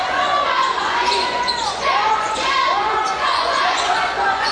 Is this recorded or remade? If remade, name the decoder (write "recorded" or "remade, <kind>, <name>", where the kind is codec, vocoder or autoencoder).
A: remade, vocoder, Vocos